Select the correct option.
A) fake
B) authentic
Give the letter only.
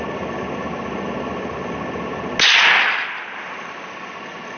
B